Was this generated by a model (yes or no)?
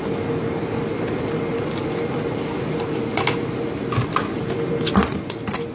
no